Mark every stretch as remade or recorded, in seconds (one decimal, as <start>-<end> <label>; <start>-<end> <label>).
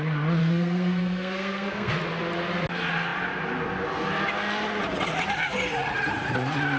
0.0-0.4 recorded; 0.4-1.9 remade; 1.9-6.8 recorded